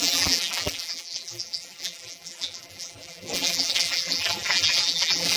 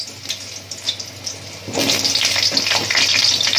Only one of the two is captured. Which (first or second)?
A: second